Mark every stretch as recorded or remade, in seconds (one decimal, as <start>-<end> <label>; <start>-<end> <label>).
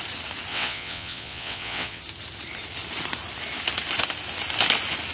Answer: 0.0-0.5 recorded; 0.5-2.0 remade; 2.0-5.1 recorded